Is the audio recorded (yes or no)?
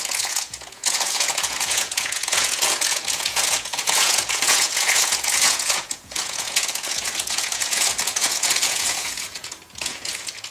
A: no